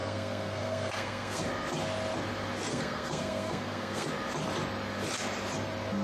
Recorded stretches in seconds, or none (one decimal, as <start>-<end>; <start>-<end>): 1.4-2.7; 4.1-6.0